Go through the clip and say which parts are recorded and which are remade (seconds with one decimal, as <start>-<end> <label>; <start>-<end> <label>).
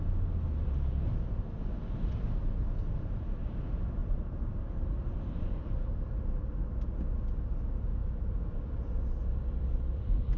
0.0-4.0 recorded; 4.0-5.6 remade; 5.6-8.0 recorded; 8.0-10.4 remade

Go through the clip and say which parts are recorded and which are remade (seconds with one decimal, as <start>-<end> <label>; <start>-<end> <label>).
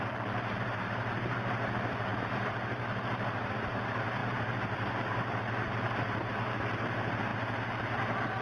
0.0-8.4 remade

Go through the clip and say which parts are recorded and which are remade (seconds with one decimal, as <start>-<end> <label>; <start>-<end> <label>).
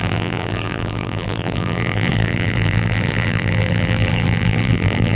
0.0-5.2 remade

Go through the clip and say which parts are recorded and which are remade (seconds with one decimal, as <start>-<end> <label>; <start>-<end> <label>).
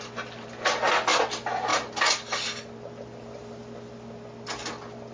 0.0-5.1 recorded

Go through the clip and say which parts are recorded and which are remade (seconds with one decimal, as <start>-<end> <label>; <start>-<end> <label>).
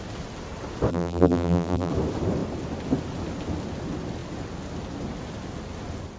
0.0-0.9 recorded; 0.9-1.9 remade; 1.9-6.2 recorded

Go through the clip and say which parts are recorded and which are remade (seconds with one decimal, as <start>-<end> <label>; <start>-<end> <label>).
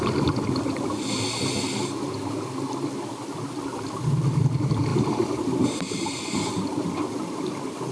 0.0-4.9 recorded; 4.9-6.2 remade; 6.2-7.9 recorded